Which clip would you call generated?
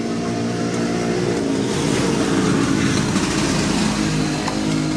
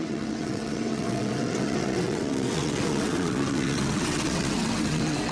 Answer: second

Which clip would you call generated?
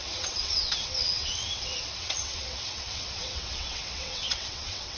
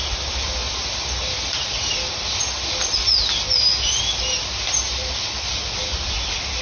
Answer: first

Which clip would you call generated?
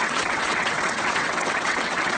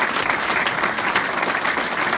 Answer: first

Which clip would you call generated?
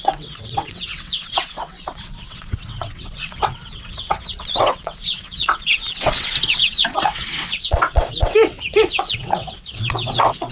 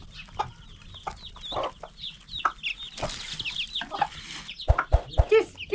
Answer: first